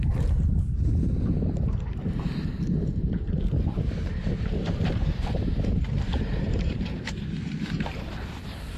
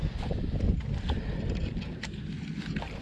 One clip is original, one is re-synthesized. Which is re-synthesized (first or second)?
first